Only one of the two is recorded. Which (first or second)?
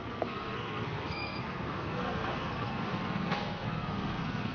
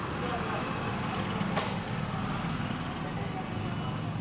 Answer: second